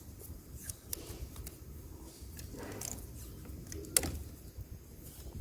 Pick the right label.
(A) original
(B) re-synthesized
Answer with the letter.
A